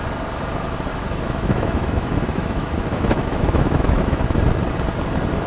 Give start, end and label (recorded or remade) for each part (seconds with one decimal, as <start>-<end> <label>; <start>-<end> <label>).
0.0-0.9 recorded; 0.9-4.2 remade; 4.2-5.5 recorded